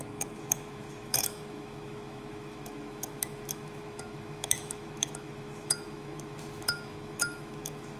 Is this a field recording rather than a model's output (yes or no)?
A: no